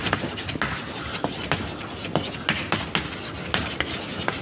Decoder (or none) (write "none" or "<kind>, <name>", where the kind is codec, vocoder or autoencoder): none